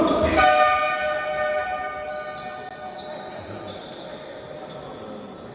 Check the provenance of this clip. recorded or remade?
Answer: recorded